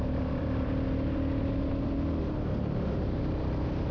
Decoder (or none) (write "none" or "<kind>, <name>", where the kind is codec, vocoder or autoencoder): none